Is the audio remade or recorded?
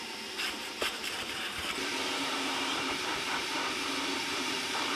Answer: remade